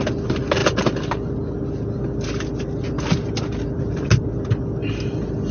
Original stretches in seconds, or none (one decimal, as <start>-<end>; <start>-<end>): 0.0-5.5